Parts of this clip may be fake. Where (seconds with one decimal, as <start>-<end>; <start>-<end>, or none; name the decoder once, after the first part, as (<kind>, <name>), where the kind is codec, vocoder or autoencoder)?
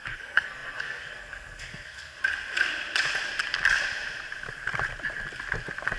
0.0-2.2 (codec, SNAC)